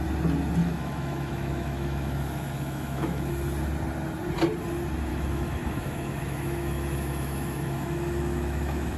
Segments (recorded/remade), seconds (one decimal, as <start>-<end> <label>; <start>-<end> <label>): 0.0-0.6 recorded; 0.6-3.3 remade; 3.3-5.1 recorded; 5.1-9.0 remade